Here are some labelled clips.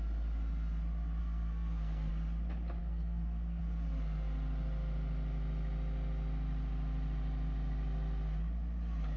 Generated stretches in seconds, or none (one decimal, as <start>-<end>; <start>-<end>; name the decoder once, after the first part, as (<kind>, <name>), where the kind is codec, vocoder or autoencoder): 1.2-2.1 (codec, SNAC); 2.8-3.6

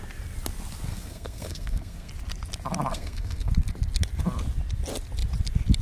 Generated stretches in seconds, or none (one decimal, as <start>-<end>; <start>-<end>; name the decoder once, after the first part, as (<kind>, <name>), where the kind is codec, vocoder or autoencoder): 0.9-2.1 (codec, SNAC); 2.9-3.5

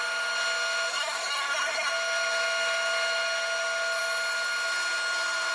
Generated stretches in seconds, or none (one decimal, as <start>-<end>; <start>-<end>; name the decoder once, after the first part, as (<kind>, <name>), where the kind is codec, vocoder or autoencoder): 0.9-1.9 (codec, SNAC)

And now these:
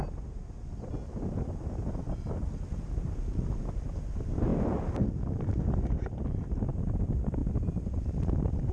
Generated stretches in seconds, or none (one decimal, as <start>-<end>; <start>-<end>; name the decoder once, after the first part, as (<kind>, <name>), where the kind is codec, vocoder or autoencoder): none

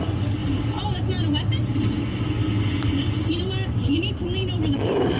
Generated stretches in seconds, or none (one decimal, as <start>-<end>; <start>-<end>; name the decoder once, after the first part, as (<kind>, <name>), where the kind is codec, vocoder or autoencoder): none

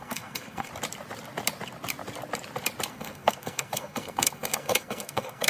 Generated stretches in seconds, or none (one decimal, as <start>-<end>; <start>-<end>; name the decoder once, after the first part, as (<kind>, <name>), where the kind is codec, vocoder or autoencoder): 0.0-0.7 (codec, SNAC); 2.9-5.5

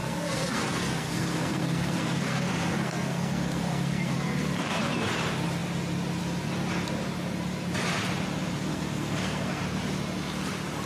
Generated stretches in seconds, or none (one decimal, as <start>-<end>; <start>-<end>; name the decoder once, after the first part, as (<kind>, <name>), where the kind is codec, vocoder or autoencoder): 0.0-4.8 (codec, SNAC); 8.7-9.6